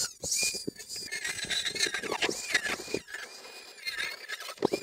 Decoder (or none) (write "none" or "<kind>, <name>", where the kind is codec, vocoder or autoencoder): none